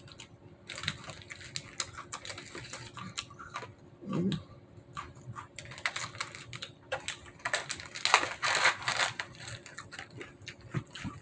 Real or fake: real